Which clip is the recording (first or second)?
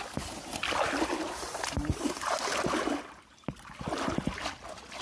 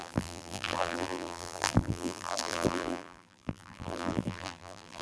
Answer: first